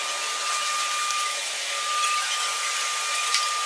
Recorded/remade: recorded